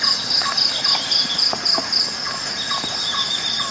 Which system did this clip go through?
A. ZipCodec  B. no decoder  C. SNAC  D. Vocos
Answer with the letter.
B